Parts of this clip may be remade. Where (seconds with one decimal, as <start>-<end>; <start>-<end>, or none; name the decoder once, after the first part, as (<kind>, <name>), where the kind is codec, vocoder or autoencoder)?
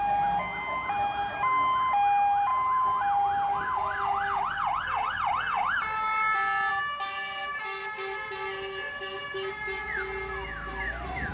none